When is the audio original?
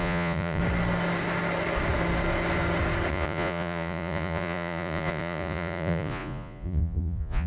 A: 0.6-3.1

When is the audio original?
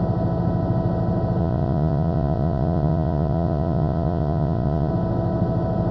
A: 0.0-1.4; 4.9-5.9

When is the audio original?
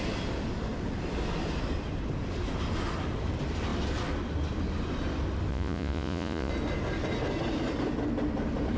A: 0.0-5.5; 6.5-8.8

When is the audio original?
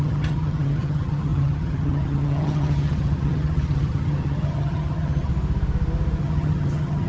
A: 5.3-6.2